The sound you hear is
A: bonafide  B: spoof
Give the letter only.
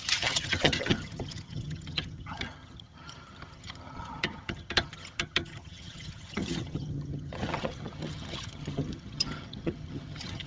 B